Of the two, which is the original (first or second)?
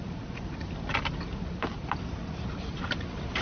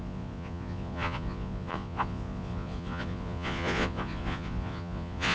first